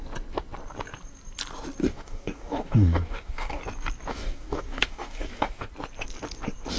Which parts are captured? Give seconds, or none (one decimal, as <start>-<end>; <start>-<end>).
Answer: 0.0-1.8; 3.6-4.1; 5.7-6.8